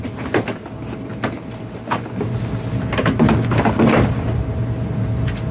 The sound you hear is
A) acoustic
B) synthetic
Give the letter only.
A